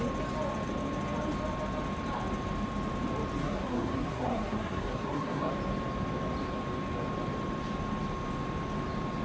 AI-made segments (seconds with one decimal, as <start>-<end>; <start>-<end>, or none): 3.4-5.5